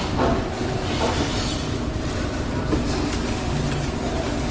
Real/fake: fake